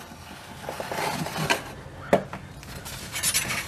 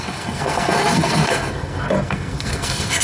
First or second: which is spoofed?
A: second